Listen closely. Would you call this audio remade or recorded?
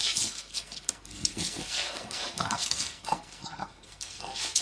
remade